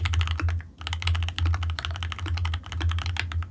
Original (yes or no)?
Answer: yes